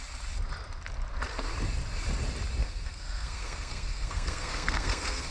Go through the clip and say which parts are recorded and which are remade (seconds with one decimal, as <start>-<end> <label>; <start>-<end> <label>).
0.0-2.6 recorded; 2.6-5.3 remade